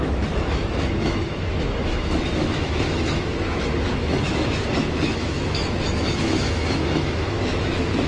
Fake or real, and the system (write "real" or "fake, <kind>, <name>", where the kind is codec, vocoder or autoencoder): fake, autoencoder, DAC-VAE